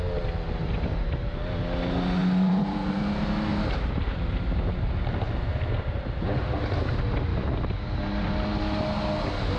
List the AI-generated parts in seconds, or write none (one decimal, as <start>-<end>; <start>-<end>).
2.2-3.0; 3.5-4.7; 7.3-8.0